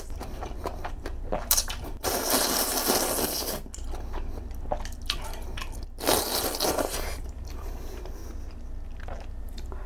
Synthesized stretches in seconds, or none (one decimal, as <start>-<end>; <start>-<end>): 0.0-2.7; 6.9-8.2; 9.4-9.9